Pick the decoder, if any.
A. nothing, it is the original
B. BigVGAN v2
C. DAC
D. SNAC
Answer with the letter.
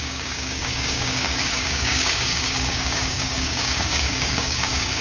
C